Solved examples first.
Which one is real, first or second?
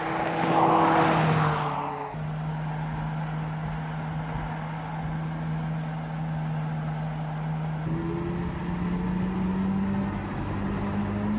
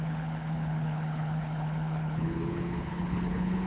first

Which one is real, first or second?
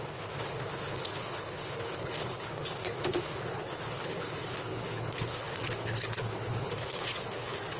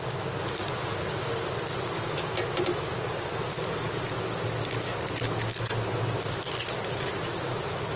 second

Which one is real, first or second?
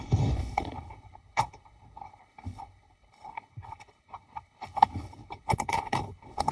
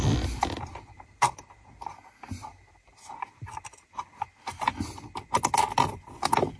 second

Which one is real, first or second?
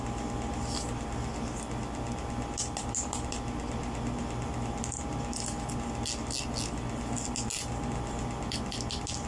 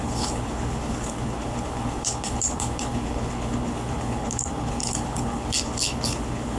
first